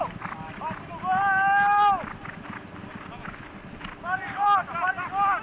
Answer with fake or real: real